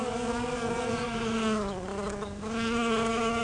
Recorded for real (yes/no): no